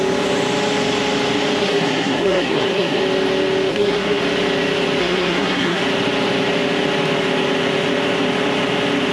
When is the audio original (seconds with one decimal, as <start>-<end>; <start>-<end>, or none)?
0.0-1.6; 3.0-3.7; 4.2-5.0; 5.8-9.1

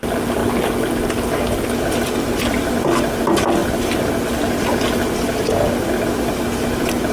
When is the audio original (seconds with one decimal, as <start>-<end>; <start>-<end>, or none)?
0.0-7.1

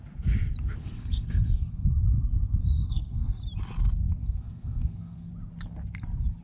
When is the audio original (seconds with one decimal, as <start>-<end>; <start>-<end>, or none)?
0.0-0.8; 1.9-2.6; 3.4-4.2; 5.3-6.4

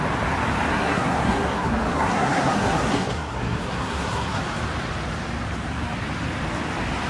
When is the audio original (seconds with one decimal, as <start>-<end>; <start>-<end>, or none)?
0.0-0.7; 4.4-7.1

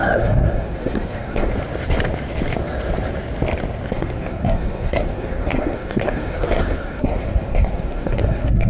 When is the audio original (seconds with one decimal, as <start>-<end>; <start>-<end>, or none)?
1.5-3.9

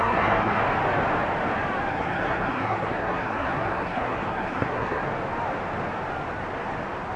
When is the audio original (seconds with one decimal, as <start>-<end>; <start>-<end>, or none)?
0.6-1.9; 5.0-7.2

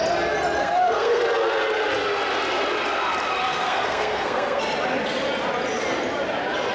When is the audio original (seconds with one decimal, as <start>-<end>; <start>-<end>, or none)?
0.0-0.6; 1.2-3.4; 4.6-6.7

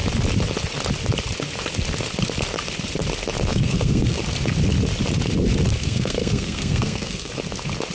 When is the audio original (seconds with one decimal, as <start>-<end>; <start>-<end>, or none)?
0.0-3.5; 4.2-5.7; 7.3-7.9